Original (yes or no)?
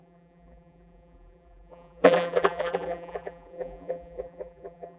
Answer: no